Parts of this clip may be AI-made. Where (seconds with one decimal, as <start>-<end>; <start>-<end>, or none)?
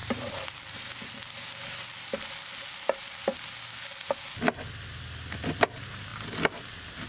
none